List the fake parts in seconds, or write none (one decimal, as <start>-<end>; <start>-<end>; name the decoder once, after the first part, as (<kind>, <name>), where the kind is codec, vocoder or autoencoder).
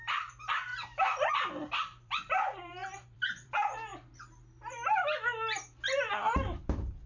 0.0-0.7 (vocoder, BigVGAN v2); 1.3-3.9; 6.1-7.1